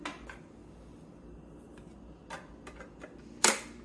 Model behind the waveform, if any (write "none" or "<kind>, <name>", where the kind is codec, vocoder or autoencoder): none